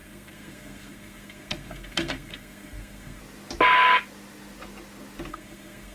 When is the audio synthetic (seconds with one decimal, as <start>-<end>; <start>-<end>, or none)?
0.0-3.2; 5.3-5.9